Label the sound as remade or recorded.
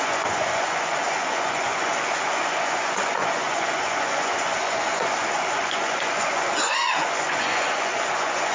remade